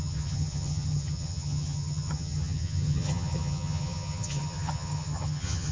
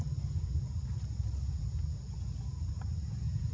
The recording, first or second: second